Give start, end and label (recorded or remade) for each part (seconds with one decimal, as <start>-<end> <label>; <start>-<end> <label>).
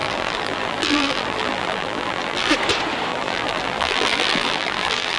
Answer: 0.0-2.5 remade; 2.5-3.1 recorded; 3.1-5.2 remade